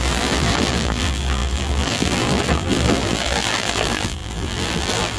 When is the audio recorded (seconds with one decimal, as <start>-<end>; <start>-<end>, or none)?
none